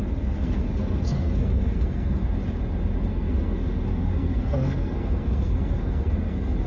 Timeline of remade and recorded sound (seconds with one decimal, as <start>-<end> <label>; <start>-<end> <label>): 0.0-2.2 remade; 2.2-3.1 recorded; 3.1-6.7 remade